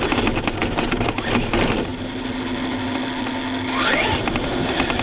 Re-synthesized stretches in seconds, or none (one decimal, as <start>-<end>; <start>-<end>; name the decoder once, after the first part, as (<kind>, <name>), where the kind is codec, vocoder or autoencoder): 0.0-0.6 (vocoder, BigVGAN v2); 1.5-1.9